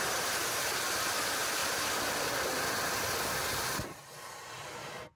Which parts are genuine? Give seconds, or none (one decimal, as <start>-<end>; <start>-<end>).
0.0-5.2